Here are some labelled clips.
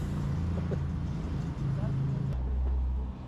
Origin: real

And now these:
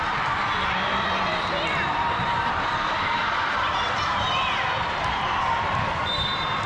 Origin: fake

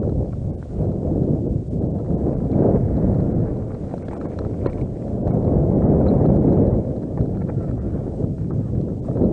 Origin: real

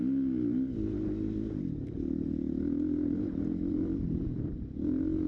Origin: real